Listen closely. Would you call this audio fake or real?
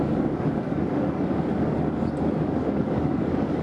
fake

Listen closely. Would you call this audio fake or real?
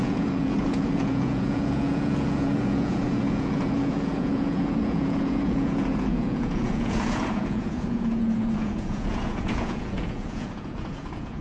fake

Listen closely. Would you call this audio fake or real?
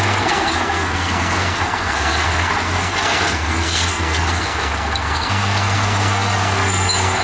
fake